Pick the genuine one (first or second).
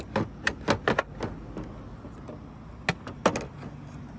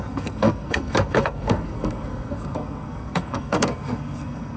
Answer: first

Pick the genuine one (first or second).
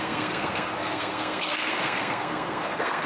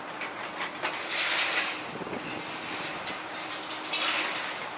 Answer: second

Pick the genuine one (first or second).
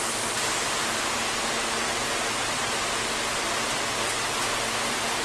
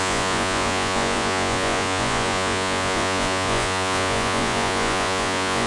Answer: first